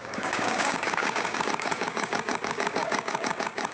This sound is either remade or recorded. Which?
remade